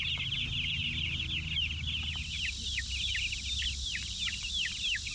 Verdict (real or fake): real